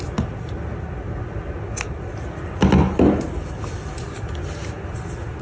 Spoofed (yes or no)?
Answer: no